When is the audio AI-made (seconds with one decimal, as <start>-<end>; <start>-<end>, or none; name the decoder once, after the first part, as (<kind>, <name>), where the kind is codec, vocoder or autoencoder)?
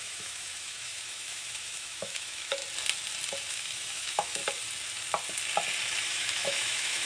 0.0-2.6 (autoencoder, DAC-VAE); 3.5-4.4; 6.0-7.1